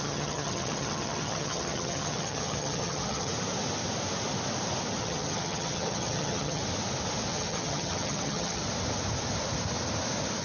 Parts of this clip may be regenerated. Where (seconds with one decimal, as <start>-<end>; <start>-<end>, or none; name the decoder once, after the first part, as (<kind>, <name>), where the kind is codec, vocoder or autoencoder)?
0.0-3.3 (vocoder, HiFi-GAN); 5.0-6.6; 7.3-8.6